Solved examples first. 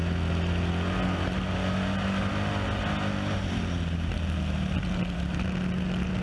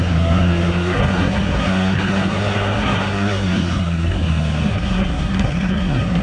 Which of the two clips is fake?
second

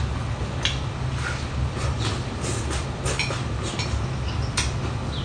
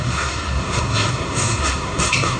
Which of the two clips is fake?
second